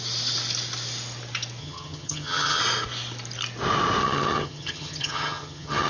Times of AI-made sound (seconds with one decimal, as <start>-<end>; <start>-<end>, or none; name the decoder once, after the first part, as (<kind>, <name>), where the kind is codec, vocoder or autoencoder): 1.6-2.6 (vocoder, HiFi-GAN); 4.0-5.9